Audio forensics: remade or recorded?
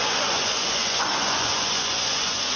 remade